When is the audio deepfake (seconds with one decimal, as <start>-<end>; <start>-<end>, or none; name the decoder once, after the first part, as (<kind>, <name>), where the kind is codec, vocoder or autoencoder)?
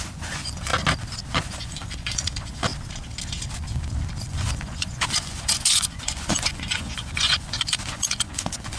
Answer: 0.0-0.7 (vocoder, Vocos); 1.3-2.7; 4.3-8.8